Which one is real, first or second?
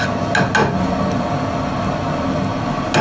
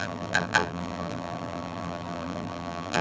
first